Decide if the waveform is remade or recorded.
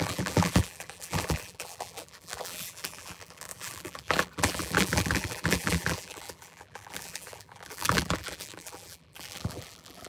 remade